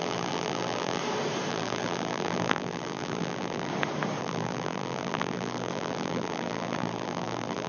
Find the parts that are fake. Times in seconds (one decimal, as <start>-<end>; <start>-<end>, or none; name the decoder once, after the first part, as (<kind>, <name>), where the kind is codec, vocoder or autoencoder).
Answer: 0.0-1.0 (vocoder, BigVGAN v2); 1.5-3.7; 4.2-7.7